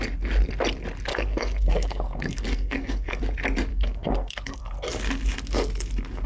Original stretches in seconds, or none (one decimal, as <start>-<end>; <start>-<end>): 0.0-1.1; 3.2-3.7; 4.6-6.3